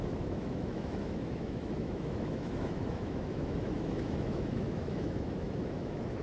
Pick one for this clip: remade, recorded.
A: remade